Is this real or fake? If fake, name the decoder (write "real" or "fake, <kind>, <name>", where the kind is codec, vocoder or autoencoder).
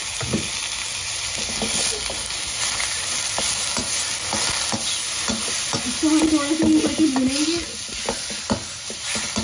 real